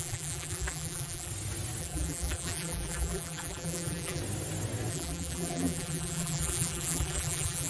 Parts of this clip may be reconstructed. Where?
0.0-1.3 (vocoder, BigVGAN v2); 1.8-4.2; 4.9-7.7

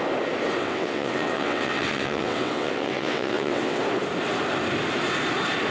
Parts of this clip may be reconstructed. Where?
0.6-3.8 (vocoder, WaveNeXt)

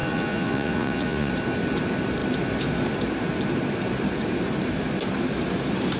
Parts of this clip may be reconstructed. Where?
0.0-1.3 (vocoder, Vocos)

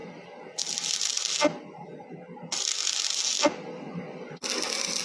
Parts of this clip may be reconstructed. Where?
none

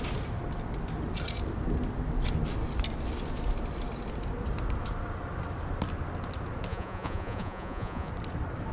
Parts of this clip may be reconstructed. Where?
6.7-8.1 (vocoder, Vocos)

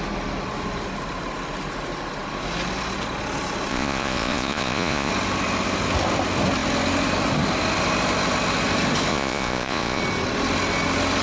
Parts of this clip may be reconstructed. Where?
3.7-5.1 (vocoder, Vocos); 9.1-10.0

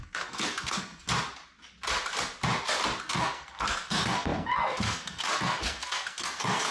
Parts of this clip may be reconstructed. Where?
0.0-1.1 (codec, SNAC); 3.0-6.7

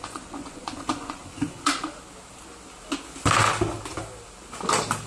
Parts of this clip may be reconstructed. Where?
0.0-1.9 (vocoder, Vocos)